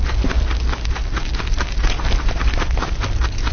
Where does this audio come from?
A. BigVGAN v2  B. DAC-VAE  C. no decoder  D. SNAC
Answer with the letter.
C